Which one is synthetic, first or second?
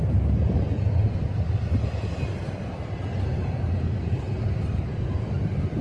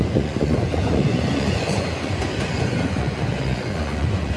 second